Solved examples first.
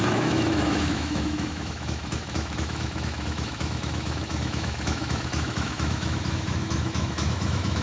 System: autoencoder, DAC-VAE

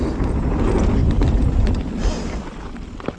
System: none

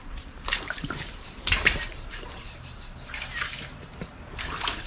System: vocoder, BigVGAN v2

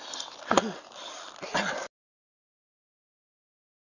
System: none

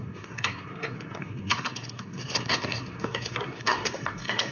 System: codec, SNAC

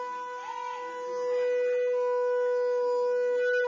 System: none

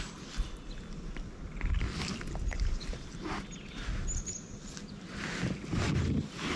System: none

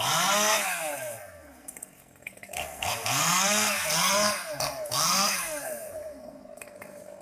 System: codec, SNAC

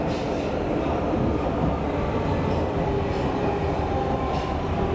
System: none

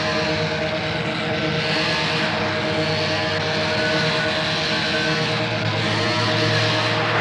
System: none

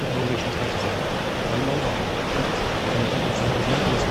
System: none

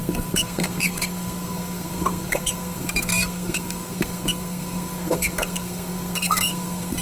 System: codec, SNAC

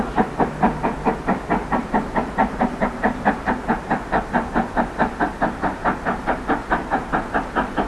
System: none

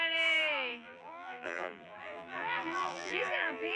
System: vocoder, BigVGAN v2